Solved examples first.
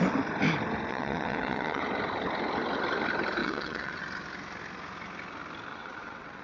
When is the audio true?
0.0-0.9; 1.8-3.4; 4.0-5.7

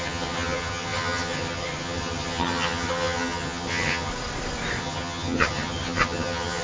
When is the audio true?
4.1-4.8

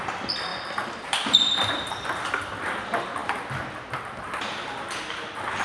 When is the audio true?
0.0-0.5; 1.7-5.6

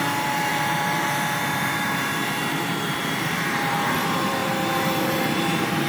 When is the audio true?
none

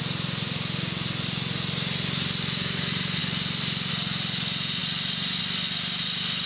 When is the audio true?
0.0-6.5